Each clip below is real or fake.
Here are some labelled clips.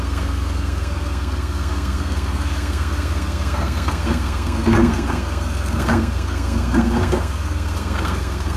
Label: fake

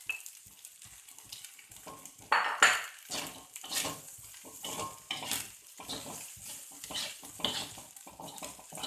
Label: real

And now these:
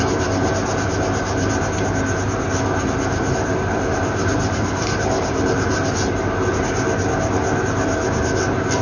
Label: real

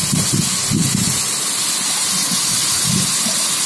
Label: real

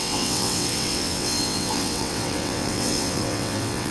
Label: fake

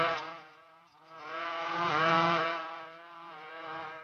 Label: fake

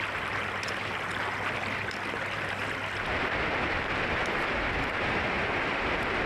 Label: real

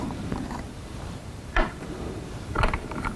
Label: fake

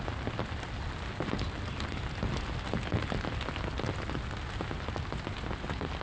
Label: real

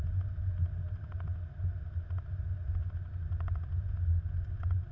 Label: real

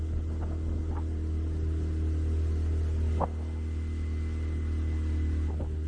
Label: real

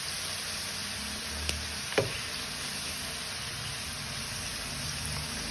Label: real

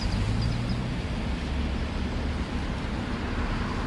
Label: real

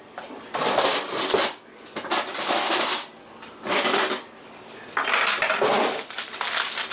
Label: real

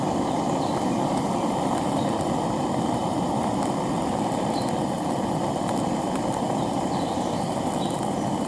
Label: fake